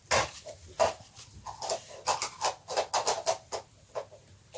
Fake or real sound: real